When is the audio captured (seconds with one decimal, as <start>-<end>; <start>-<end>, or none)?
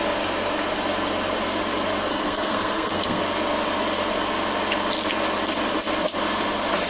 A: 0.0-2.1; 3.2-6.9